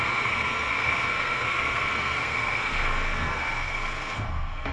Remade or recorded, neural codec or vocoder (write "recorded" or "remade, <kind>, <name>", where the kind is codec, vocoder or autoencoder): remade, codec, SNAC